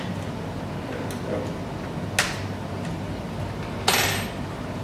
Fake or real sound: real